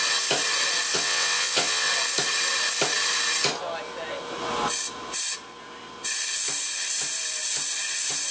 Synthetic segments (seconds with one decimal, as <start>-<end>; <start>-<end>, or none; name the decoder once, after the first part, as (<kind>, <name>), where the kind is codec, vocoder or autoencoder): 0.9-1.9 (vocoder, WaveNeXt)